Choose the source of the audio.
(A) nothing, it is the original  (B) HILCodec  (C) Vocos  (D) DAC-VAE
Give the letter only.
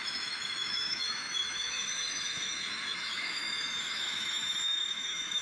D